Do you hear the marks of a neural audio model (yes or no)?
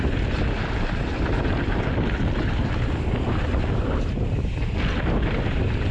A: yes